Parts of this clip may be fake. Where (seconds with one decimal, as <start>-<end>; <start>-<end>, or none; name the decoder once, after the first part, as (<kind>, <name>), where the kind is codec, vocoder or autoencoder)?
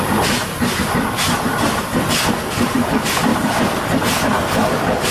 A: none